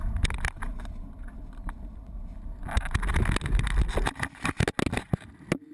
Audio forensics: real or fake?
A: real